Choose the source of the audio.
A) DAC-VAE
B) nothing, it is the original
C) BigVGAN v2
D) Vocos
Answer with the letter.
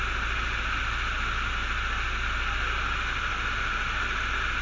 B